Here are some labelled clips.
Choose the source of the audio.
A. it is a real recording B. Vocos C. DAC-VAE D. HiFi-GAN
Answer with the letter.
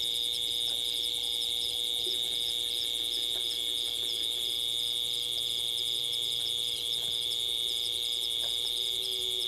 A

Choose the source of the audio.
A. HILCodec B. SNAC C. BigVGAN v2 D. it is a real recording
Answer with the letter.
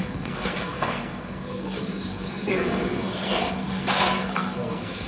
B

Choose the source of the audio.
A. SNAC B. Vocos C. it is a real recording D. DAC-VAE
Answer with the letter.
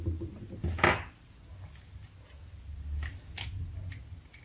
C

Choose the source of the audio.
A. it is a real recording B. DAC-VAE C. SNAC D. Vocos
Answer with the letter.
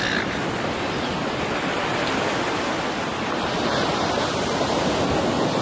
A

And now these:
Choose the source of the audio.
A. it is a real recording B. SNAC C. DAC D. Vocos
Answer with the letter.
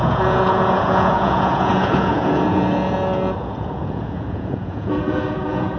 D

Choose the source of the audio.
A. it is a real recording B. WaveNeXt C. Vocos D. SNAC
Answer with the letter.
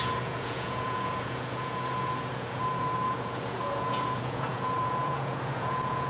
C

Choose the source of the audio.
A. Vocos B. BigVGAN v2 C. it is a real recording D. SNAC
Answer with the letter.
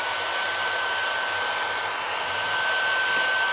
C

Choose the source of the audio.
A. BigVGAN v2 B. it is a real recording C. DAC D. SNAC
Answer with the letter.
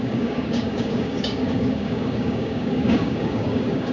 C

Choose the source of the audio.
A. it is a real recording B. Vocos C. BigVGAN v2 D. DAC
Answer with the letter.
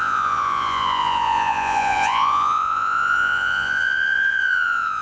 B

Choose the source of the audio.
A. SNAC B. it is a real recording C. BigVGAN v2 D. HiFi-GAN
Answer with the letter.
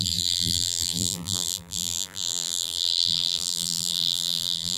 C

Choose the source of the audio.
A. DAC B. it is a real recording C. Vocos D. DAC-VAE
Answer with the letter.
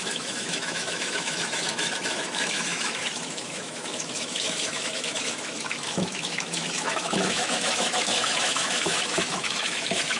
D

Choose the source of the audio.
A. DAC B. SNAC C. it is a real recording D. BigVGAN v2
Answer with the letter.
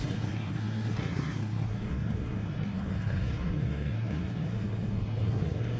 B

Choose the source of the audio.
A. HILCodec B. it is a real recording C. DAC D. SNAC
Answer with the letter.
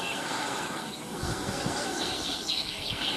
D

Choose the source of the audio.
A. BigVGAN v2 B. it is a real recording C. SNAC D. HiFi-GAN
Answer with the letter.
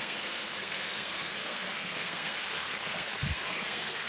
C